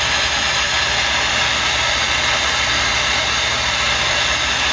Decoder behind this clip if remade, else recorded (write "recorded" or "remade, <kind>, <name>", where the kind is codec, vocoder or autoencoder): recorded